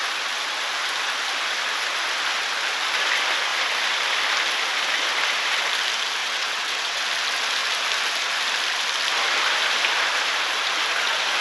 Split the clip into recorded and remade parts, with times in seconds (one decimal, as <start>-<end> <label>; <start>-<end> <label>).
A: 0.0-6.2 recorded; 6.2-7.0 remade; 7.0-11.4 recorded